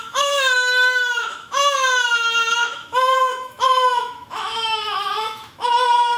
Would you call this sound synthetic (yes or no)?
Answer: yes